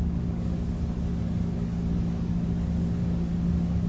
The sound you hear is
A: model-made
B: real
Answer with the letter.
A